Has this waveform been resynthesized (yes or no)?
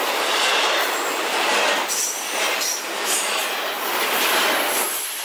no